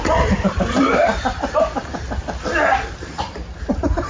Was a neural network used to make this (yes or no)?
yes